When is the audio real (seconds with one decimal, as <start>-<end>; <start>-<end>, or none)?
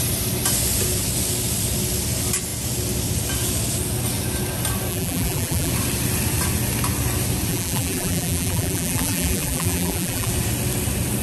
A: 0.0-4.9; 5.7-7.5; 10.3-11.2